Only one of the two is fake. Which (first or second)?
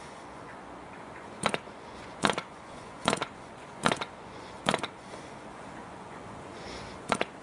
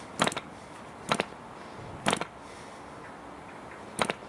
first